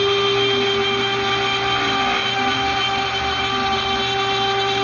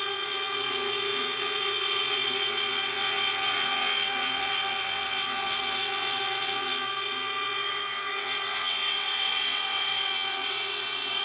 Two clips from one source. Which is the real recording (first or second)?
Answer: first